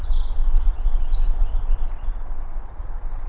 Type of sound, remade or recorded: remade